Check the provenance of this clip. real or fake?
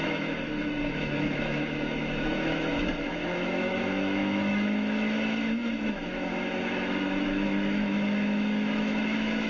fake